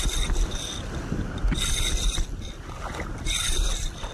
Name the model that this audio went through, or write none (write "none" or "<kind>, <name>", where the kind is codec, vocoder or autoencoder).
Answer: none